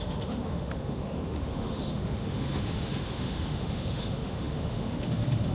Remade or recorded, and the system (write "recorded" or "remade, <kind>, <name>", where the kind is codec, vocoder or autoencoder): remade, autoencoder, DAC-VAE